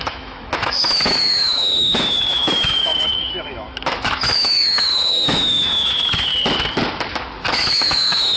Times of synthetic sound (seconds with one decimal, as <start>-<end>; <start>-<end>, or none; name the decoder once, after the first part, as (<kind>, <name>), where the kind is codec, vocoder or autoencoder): 0.0-6.3 (autoencoder, DAC-VAE); 7.5-8.4